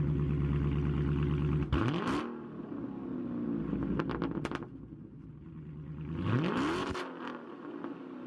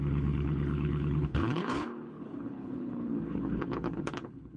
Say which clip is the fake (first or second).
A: second